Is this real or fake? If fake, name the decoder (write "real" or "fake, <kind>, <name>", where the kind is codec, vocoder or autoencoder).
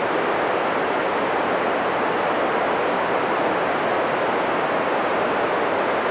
real